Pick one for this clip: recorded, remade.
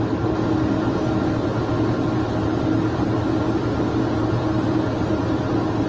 recorded